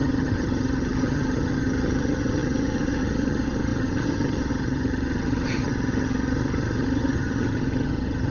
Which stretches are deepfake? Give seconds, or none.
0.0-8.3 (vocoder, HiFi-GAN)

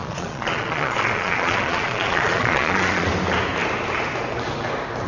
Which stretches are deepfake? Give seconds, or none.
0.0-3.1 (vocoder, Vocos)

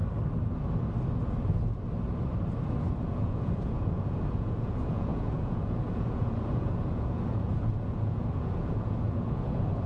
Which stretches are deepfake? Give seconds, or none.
2.9-9.9 (vocoder, Vocos)

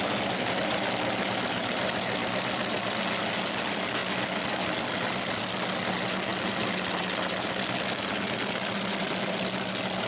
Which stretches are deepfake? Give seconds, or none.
none